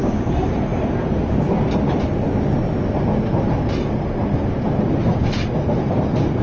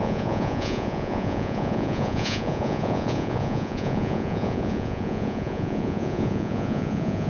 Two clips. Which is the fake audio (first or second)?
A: second